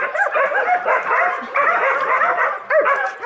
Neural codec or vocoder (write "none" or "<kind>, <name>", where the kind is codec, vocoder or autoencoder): vocoder, BigVGAN v2